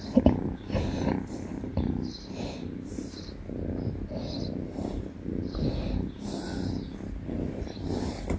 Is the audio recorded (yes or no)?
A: yes